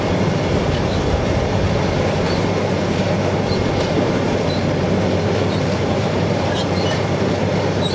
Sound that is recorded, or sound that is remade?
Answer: remade